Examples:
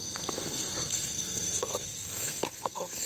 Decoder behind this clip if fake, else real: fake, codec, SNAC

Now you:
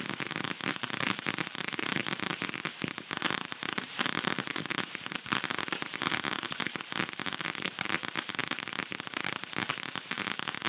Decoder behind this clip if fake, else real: fake, vocoder, BigVGAN v2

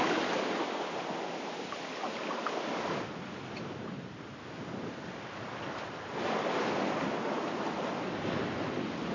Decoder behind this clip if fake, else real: real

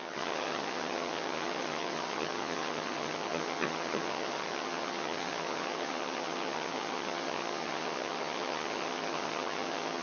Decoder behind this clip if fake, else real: fake, vocoder, HiFi-GAN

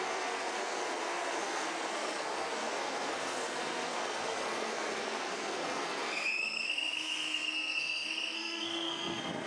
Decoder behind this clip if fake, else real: fake, codec, SNAC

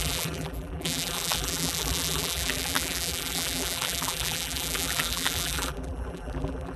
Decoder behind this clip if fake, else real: fake, vocoder, BigVGAN v2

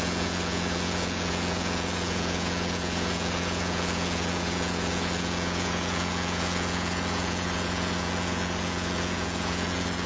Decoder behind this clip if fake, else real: fake, vocoder, Vocos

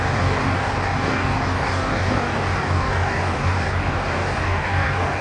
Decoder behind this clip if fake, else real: fake, codec, DAC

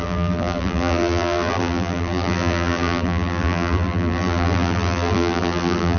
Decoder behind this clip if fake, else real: fake, vocoder, BigVGAN v2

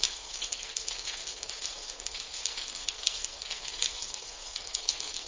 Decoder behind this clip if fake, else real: fake, codec, SNAC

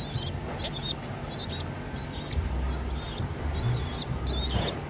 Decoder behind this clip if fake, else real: real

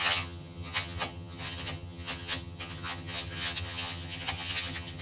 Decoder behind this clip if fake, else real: fake, vocoder, HiFi-GAN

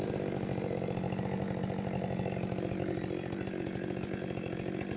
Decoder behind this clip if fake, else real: real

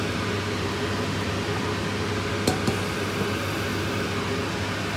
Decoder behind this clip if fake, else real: real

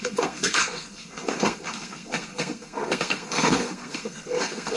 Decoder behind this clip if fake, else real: fake, codec, SNAC